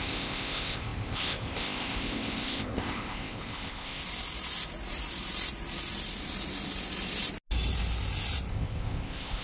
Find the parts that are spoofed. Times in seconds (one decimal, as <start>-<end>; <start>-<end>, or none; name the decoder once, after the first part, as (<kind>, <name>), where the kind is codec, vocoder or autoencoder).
0.0-4.0 (codec, ZipCodec); 8.5-9.4